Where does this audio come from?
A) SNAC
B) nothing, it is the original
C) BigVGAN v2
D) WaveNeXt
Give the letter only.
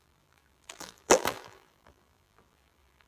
C